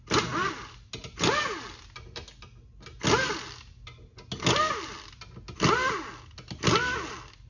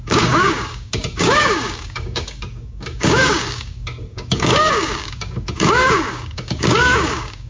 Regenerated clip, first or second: second